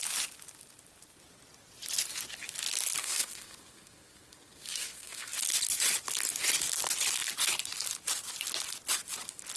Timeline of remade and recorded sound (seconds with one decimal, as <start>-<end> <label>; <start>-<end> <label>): 0.0-3.0 recorded; 3.0-5.3 remade; 5.3-9.6 recorded